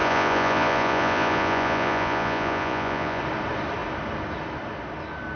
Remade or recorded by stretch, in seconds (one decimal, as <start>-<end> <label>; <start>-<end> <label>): 0.0-3.2 remade; 3.2-5.4 recorded